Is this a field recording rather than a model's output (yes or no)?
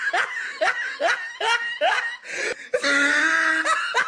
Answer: yes